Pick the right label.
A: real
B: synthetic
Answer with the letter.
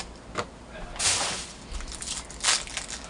A